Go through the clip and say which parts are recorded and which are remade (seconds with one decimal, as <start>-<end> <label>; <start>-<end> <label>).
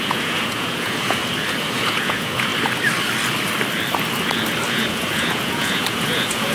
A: 0.0-1.2 remade; 1.2-1.8 recorded; 1.8-2.5 remade; 2.5-4.7 recorded; 4.7-6.5 remade